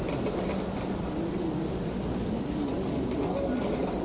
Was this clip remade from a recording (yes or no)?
no